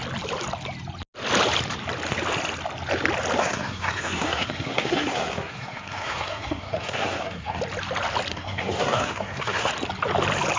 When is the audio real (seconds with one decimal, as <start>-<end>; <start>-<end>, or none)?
0.0-3.4; 7.6-8.3; 9.7-10.6